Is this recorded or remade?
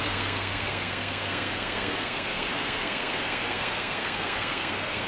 remade